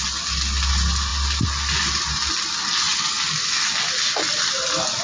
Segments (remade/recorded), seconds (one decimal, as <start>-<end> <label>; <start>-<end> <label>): 0.0-5.0 recorded